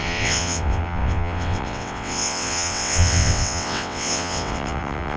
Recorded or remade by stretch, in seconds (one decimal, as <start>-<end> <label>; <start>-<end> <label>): 0.0-5.2 remade